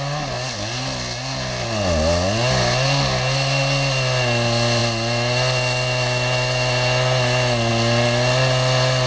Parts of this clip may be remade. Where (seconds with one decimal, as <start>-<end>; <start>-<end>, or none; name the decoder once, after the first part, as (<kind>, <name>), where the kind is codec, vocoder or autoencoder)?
none